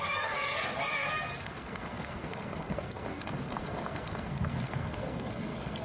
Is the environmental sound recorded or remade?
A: remade